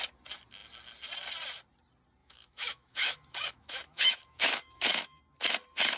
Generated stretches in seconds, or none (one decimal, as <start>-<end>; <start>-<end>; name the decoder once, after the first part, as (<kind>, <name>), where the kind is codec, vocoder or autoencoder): 2.2-5.2 (autoencoder, DAC-VAE)

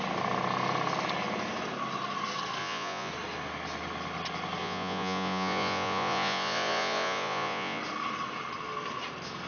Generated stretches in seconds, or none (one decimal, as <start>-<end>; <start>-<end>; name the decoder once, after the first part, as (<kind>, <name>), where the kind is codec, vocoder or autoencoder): 2.6-3.1 (vocoder, Vocos); 4.6-7.8

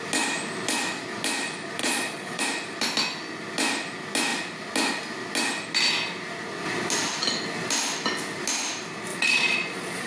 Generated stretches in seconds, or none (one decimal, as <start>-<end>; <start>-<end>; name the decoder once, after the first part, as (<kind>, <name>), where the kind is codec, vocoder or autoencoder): 1.8-2.4 (vocoder, Vocos); 9.1-10.1

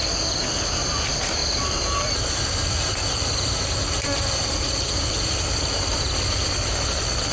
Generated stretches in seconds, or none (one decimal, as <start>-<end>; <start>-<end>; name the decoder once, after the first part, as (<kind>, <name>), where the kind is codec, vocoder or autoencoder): none

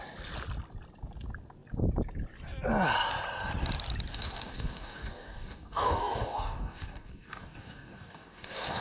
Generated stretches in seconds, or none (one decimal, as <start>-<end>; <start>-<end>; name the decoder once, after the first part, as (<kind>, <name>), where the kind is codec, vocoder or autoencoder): 4.1-8.8 (codec, DAC)

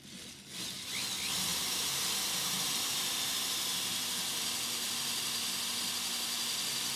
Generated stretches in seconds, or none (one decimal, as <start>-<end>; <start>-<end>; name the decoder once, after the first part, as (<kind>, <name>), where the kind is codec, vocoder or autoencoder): none

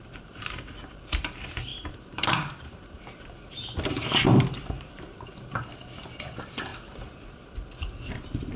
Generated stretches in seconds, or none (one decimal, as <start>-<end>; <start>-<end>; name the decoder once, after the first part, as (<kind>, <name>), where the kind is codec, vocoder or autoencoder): 0.0-6.7 (vocoder, BigVGAN v2); 8.1-8.6